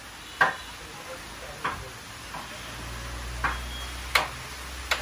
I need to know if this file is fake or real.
real